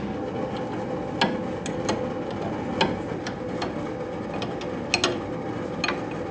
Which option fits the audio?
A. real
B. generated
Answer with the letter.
A